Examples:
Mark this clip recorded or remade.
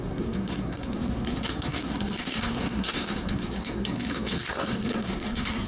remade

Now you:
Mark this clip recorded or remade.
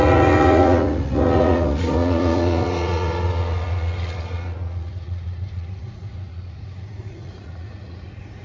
remade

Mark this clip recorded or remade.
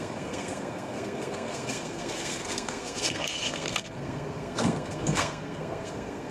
remade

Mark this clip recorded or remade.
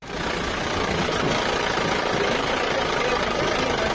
remade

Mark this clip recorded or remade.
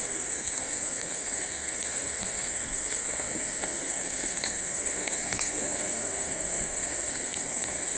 remade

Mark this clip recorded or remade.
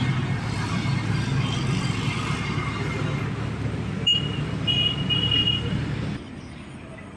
recorded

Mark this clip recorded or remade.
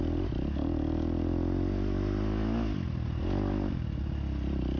recorded